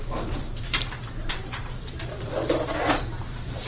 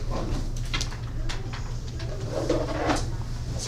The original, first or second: second